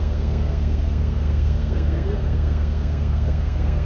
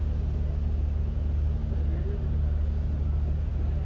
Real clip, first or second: second